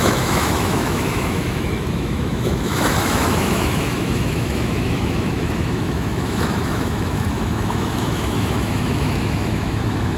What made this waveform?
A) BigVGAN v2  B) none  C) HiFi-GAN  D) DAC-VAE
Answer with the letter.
D